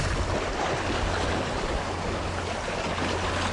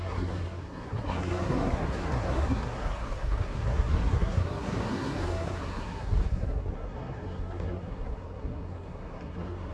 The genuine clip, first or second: first